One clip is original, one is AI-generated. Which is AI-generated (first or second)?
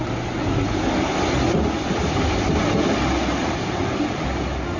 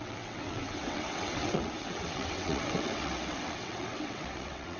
second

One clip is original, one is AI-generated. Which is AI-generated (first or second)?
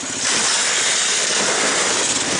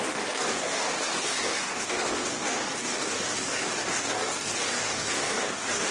second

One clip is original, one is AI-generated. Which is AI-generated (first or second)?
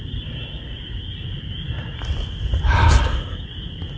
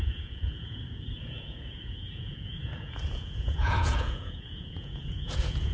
second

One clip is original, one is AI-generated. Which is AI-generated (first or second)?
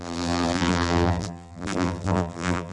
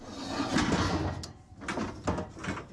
first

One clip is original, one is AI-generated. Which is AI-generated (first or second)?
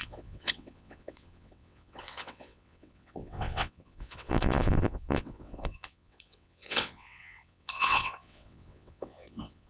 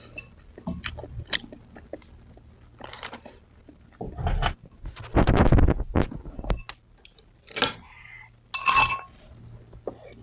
first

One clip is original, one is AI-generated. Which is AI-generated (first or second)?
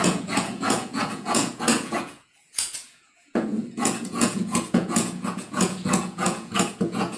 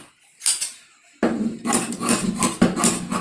first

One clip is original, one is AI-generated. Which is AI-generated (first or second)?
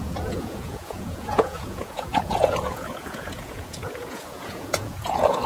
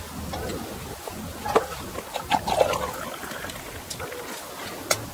first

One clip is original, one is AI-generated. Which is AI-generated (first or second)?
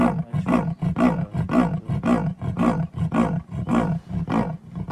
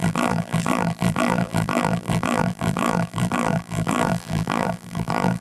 second